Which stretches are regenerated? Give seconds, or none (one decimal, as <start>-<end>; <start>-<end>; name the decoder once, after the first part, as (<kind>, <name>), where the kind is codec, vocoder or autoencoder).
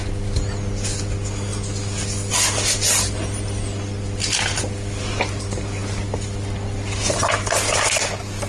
none